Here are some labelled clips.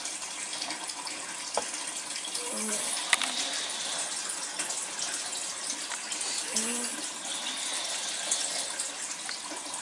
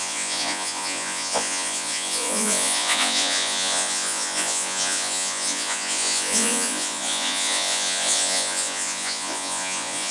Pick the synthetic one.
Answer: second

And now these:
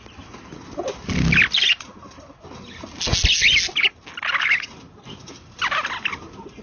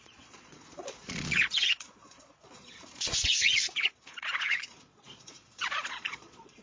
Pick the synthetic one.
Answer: second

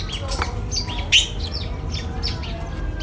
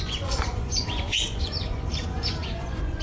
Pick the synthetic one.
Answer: second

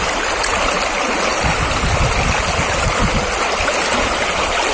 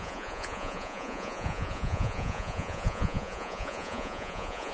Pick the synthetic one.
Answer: second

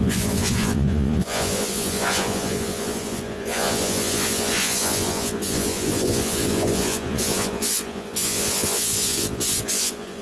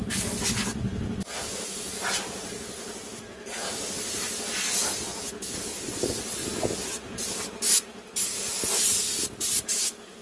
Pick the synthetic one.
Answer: first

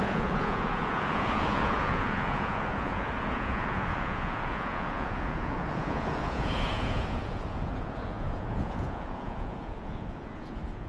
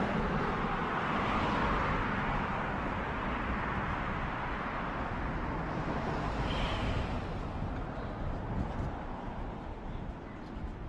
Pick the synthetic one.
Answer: first